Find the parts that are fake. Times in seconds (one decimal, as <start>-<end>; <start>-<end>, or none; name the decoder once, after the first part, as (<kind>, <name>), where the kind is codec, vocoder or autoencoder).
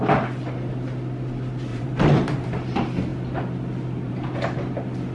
1.7-2.5 (vocoder, BigVGAN v2)